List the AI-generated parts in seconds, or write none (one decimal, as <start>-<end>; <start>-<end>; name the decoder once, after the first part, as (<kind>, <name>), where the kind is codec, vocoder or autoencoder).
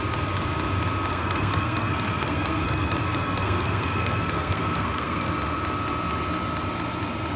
1.1-5.3 (codec, SNAC)